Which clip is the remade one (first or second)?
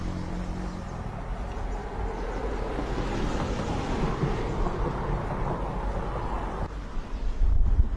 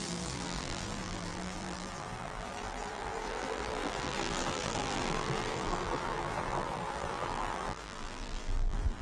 second